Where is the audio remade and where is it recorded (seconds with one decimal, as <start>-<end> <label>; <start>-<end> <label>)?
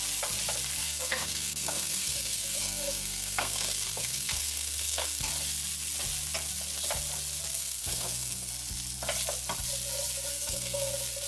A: 0.0-0.8 recorded; 0.8-5.3 remade; 5.3-7.5 recorded; 7.5-8.5 remade; 8.5-10.3 recorded; 10.3-10.9 remade; 10.9-11.3 recorded